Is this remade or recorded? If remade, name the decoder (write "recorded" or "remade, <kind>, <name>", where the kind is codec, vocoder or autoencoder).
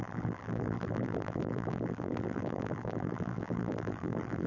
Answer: remade, vocoder, BigVGAN v2